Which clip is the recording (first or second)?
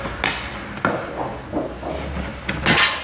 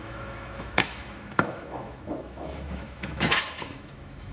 first